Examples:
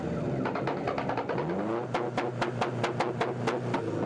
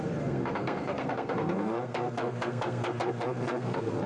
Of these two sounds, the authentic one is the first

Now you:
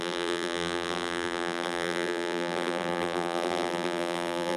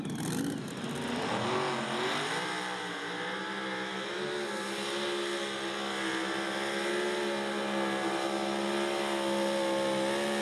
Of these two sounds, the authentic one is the second